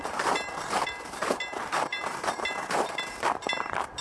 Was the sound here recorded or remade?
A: remade